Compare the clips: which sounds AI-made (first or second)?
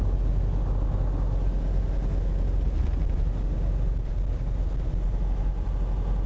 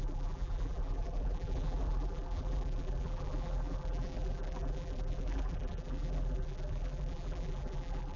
second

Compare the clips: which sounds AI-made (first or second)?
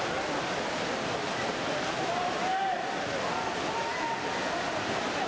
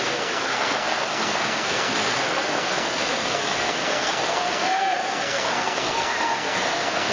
second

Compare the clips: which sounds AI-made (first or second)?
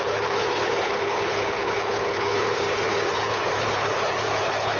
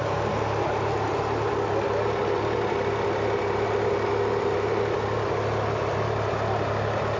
first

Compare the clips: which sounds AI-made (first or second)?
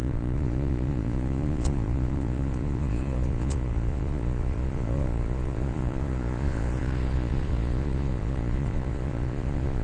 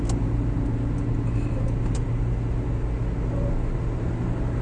first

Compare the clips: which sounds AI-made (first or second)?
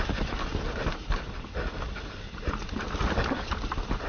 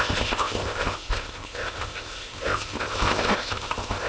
second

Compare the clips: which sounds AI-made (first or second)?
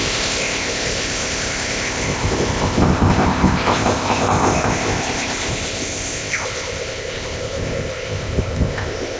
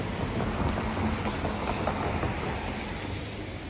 first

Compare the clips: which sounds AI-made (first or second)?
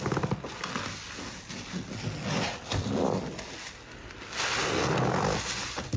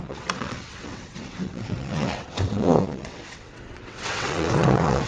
second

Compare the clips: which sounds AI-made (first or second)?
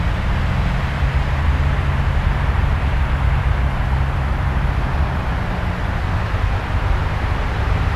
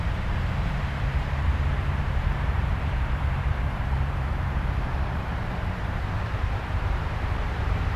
second